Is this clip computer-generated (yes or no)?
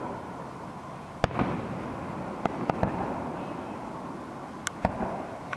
no